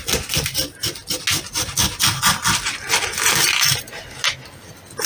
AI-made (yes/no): no